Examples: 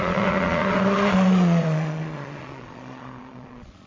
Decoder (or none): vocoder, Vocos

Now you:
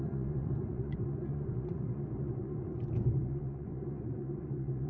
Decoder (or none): vocoder, Vocos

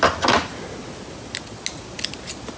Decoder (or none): none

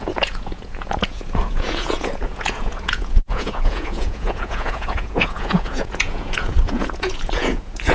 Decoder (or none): vocoder, Vocos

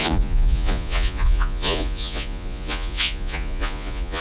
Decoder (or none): vocoder, Vocos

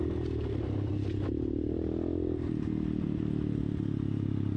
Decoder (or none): none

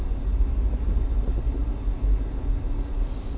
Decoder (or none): none